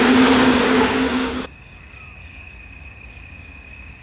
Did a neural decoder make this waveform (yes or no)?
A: yes